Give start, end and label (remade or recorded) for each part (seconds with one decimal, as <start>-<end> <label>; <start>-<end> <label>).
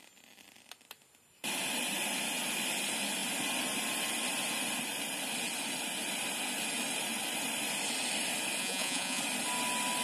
0.0-8.6 recorded; 8.6-9.2 remade; 9.2-10.0 recorded